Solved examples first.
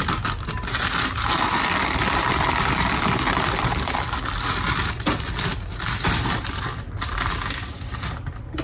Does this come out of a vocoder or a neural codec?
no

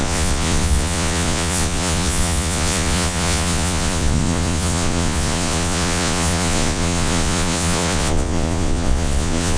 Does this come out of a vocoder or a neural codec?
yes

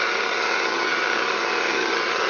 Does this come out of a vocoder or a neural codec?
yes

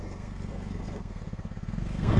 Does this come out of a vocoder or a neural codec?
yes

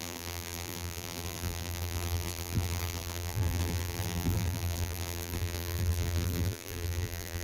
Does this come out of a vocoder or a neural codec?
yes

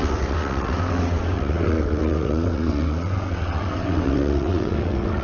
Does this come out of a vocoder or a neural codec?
yes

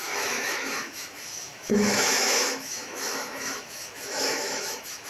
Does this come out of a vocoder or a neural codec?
yes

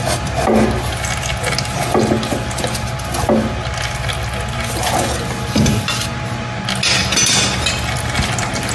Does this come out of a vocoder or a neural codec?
no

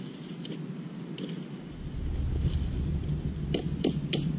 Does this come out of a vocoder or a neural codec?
no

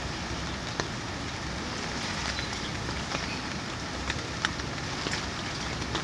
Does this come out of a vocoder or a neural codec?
no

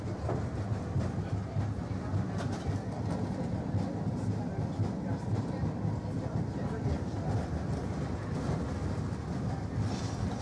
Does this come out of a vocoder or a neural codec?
no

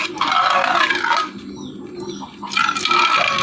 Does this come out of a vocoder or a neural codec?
no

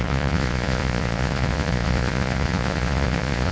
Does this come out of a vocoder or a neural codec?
yes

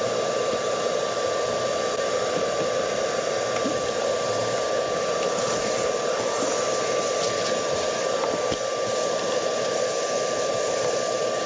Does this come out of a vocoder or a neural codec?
no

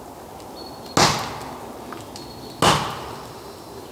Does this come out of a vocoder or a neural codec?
no